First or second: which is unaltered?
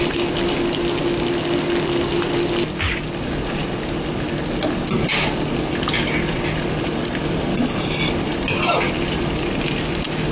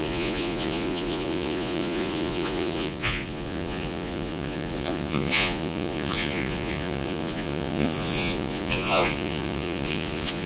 first